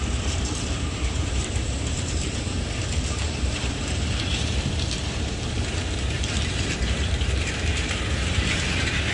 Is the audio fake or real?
fake